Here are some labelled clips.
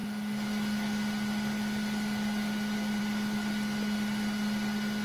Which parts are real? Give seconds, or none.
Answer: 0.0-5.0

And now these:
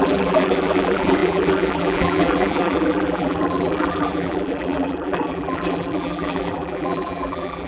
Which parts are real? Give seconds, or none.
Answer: none

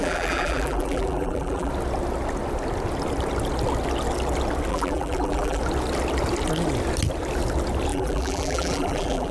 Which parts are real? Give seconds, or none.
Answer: 1.7-4.7; 5.6-7.9